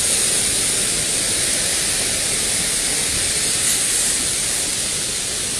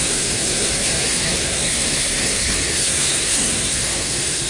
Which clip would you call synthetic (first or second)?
second